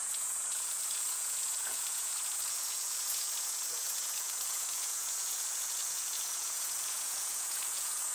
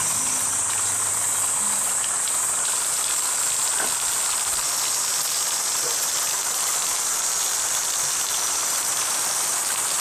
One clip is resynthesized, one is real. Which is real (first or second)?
second